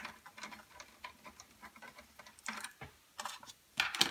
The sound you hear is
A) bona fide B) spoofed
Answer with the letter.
A